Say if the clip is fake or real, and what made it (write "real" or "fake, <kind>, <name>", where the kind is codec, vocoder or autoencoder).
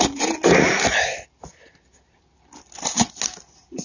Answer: real